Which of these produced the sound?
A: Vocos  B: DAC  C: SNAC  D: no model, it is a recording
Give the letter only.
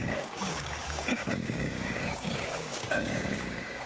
B